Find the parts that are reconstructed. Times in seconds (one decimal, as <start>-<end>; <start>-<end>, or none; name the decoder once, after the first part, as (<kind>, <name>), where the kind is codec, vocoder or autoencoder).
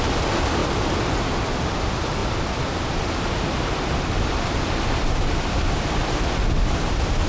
none